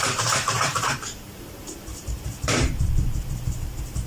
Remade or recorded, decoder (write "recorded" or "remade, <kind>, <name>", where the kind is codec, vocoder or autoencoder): remade, vocoder, BigVGAN v2